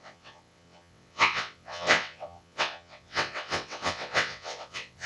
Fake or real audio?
fake